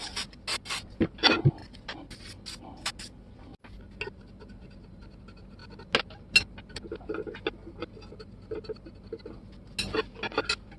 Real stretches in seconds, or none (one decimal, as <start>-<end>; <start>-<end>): 0.0-10.8